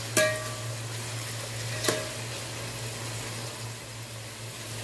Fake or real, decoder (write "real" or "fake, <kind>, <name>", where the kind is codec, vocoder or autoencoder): real